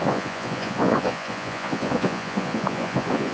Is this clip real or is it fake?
fake